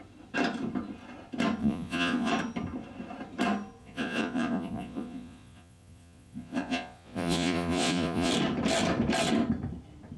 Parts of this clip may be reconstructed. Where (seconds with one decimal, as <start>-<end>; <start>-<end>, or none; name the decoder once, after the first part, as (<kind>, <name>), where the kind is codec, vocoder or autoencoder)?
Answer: 1.6-2.3 (vocoder, Vocos); 3.8-8.3